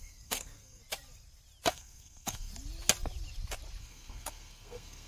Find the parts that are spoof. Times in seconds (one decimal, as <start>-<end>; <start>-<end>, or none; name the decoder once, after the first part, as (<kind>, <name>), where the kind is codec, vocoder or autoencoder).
0.0-0.8 (codec, SNAC); 1.7-2.5; 3.8-5.1